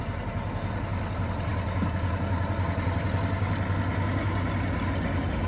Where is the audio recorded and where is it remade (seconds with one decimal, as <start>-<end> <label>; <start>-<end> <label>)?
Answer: 0.0-5.5 recorded